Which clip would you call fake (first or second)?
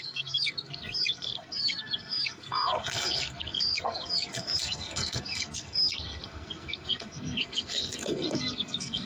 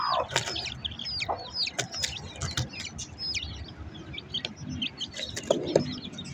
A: first